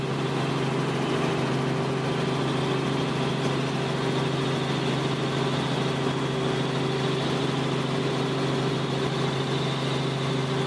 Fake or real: real